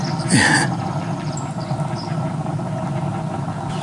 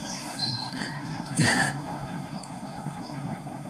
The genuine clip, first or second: first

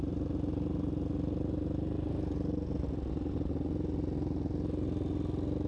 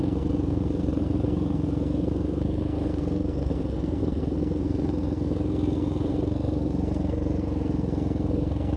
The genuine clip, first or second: first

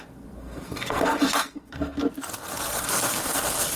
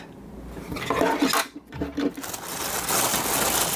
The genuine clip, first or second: second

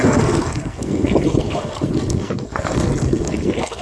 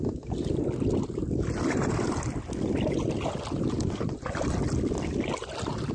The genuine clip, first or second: second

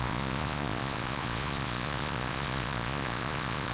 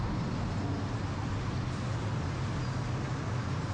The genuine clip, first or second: second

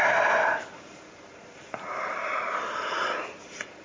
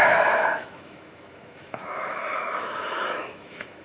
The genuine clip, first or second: first